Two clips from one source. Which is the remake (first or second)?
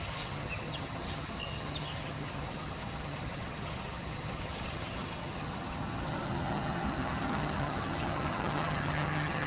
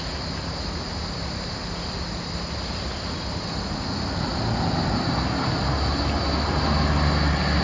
first